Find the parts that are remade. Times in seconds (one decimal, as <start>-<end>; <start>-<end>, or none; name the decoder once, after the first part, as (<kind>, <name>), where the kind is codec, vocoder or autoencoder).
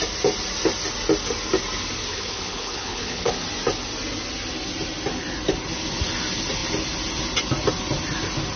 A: 2.1-3.3 (codec, HILCodec)